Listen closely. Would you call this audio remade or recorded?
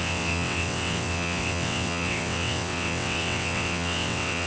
remade